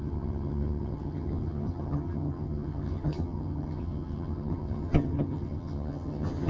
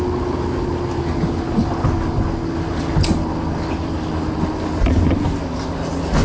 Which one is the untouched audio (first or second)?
second